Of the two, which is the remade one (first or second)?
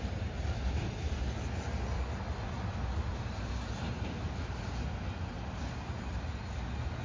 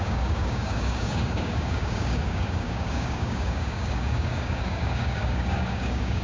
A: second